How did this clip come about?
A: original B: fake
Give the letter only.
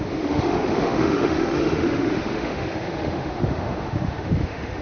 B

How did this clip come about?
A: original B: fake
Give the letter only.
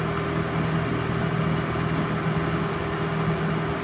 A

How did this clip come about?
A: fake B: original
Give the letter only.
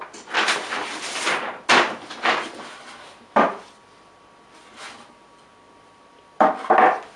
B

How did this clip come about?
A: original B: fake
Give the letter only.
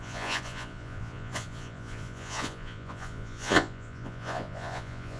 B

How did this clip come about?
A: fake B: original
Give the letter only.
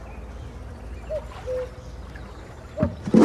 B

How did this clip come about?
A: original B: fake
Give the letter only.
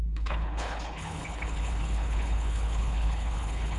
B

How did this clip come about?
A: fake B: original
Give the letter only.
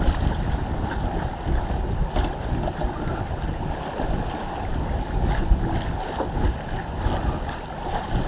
B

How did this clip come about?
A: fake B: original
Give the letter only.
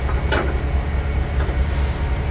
B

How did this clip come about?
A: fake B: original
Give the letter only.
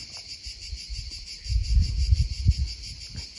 B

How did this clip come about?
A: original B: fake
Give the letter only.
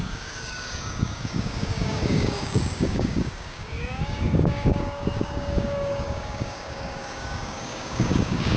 B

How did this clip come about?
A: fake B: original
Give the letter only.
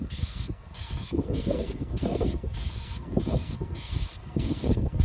A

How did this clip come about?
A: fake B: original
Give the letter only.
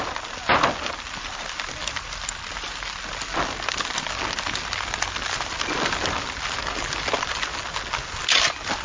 B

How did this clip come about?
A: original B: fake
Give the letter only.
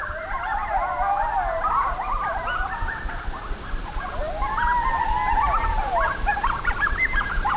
A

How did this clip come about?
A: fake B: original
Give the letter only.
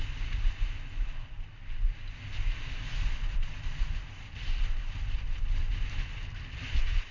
B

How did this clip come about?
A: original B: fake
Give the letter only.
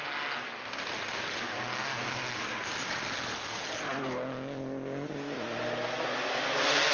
A